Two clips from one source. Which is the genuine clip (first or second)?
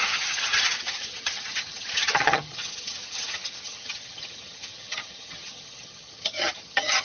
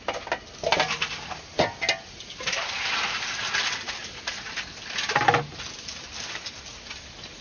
second